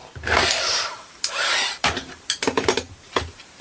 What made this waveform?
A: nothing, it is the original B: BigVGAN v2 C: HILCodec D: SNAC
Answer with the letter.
B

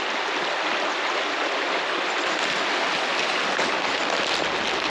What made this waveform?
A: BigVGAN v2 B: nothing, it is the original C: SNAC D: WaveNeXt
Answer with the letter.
B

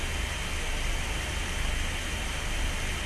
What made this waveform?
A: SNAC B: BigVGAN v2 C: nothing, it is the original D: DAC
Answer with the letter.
C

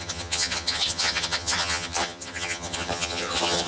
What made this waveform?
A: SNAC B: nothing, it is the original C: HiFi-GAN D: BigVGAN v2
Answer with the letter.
C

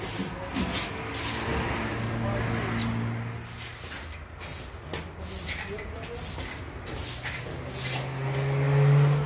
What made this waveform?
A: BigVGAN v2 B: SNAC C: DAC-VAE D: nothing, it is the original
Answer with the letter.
D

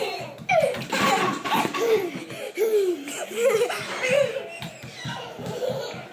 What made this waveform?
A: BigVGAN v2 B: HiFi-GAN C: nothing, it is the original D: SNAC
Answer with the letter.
C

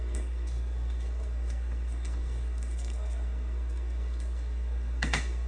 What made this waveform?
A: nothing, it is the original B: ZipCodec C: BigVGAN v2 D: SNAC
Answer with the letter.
D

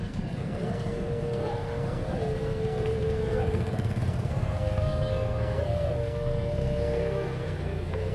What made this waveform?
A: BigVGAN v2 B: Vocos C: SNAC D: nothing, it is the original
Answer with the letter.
C